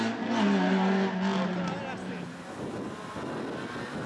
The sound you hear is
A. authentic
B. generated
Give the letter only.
A